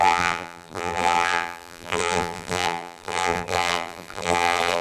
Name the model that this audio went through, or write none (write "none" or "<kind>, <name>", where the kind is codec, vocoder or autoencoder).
vocoder, BigVGAN v2